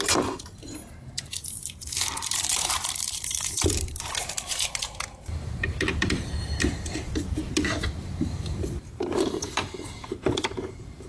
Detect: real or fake fake